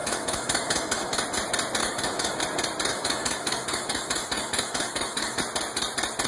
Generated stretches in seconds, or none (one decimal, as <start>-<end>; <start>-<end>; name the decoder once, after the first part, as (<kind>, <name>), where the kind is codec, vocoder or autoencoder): 0.0-1.2 (autoencoder, DAC-VAE); 1.8-2.4; 2.9-5.4